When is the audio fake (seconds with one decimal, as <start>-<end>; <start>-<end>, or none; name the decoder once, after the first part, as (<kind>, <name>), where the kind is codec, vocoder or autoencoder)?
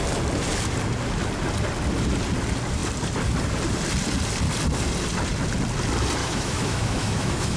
6.2-7.6 (autoencoder, DAC-VAE)